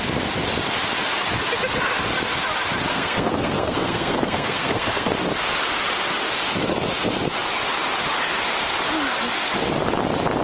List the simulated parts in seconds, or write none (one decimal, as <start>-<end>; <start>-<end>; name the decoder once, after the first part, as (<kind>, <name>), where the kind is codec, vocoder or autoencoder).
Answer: 2.9-5.1 (codec, SNAC)